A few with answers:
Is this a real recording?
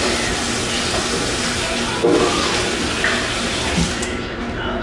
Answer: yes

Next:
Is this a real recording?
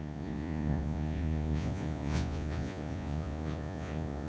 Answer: no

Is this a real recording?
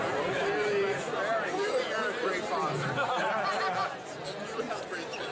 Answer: yes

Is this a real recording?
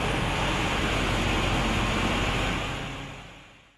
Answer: yes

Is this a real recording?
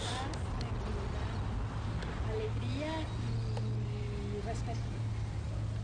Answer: yes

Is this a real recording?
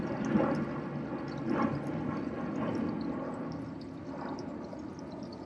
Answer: yes